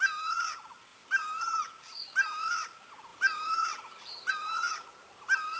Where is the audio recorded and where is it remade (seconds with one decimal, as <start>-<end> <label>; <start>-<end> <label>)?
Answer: 0.0-5.6 recorded